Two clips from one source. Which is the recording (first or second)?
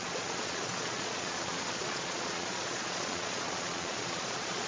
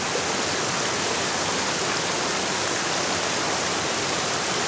second